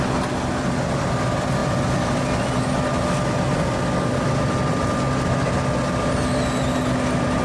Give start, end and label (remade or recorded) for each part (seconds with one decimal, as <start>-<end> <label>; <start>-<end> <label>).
0.0-7.4 recorded